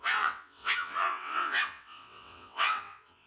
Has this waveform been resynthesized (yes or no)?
yes